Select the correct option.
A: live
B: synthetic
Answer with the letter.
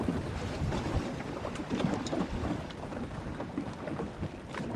B